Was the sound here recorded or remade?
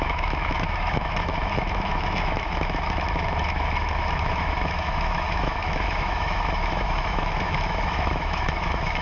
remade